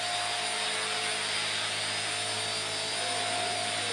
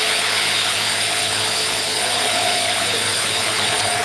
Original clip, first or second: first